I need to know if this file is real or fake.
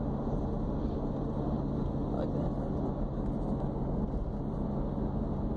real